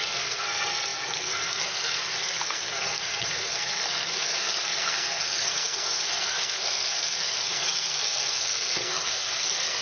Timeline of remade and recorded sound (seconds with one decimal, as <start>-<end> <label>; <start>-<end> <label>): 0.0-9.8 remade